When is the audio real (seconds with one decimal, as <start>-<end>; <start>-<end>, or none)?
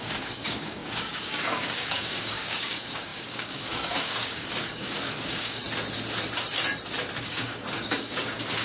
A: 5.6-7.2